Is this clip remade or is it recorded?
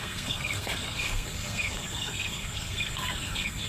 remade